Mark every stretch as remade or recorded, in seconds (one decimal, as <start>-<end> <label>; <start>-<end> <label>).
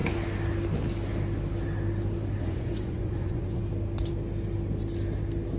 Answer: 0.0-2.4 recorded; 2.4-3.6 remade; 3.6-5.6 recorded